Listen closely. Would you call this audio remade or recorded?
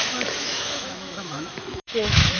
remade